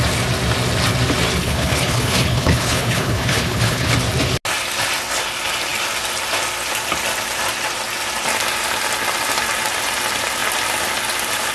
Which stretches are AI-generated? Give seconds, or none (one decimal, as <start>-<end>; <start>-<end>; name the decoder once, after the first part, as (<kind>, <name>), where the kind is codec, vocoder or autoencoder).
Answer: 1.4-3.9 (codec, HILCodec)